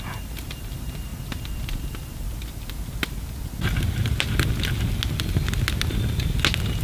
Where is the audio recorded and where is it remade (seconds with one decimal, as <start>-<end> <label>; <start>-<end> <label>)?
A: 0.0-6.8 recorded